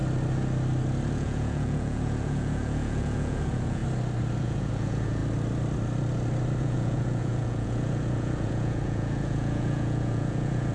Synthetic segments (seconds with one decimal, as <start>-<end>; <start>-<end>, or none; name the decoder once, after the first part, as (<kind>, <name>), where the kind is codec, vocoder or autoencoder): 1.1-3.8 (vocoder, Vocos); 4.4-5.2; 6.6-10.7